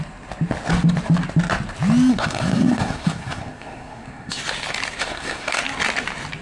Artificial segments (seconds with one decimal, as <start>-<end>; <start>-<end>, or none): 2.1-4.4; 5.0-5.6